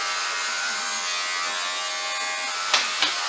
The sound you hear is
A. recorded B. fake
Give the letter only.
A